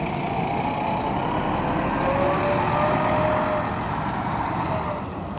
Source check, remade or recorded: recorded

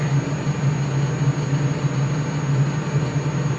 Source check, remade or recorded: recorded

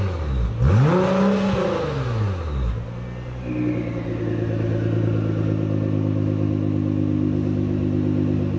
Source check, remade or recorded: recorded